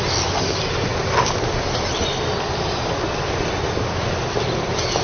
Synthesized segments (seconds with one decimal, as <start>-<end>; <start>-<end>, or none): none